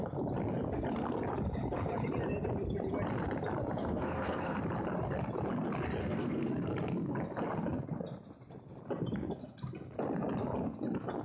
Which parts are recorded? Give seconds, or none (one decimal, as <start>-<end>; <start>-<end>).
0.0-3.8; 4.6-6.0; 6.5-11.2